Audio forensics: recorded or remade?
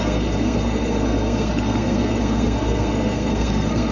remade